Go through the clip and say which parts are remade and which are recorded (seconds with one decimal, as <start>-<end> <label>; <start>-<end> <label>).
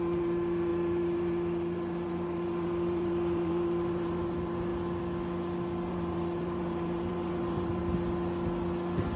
0.0-4.7 remade; 4.7-5.9 recorded; 5.9-7.8 remade; 7.8-9.2 recorded